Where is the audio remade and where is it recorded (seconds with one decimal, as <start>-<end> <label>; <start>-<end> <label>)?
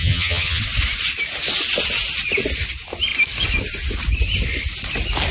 0.0-0.6 remade; 0.6-5.3 recorded